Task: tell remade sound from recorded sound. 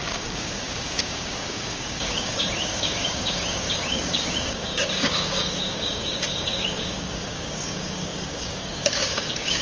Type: remade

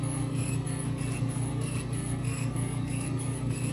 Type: remade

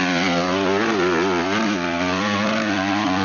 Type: remade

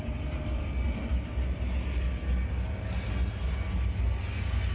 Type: recorded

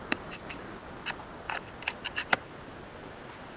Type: recorded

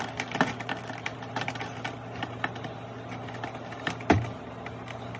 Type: recorded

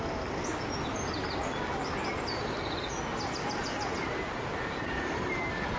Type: recorded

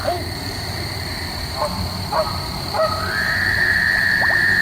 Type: remade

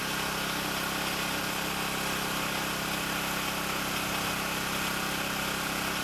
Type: recorded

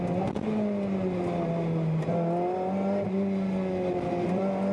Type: recorded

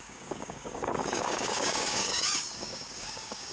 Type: remade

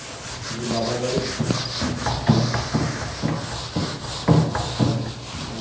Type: recorded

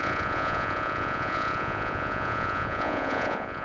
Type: remade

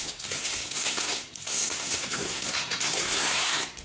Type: remade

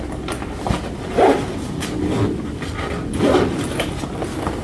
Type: recorded